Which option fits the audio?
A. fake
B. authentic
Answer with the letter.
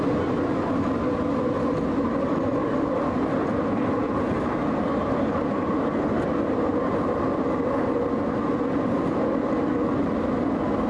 B